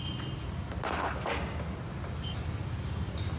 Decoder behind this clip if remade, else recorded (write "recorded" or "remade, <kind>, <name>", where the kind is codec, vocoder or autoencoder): recorded